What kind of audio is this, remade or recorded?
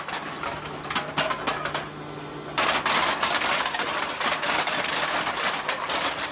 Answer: recorded